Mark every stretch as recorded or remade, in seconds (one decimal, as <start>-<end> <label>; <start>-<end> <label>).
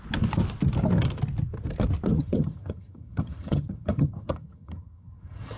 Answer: 0.0-2.1 recorded; 2.1-5.6 remade